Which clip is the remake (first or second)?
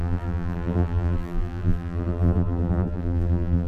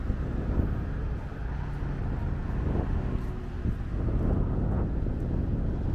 first